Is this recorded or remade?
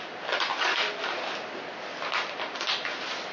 recorded